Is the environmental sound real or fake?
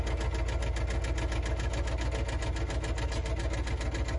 real